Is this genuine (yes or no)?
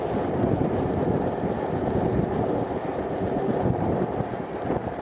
no